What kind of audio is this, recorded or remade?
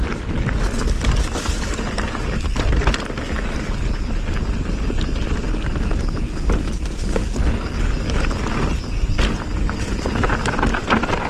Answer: recorded